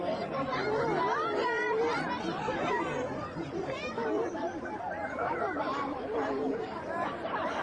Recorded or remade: remade